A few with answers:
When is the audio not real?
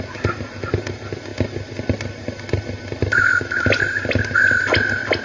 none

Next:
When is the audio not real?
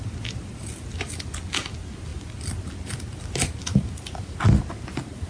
none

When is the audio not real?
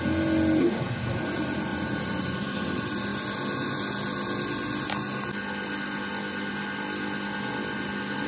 0.6-1.2 (codec, SNAC)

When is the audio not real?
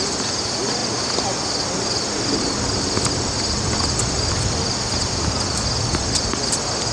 none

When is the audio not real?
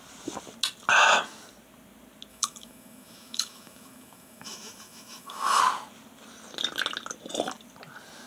2.3-5.6 (autoencoder, DAC-VAE)